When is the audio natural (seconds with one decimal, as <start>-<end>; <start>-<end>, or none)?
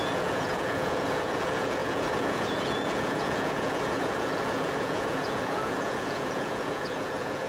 none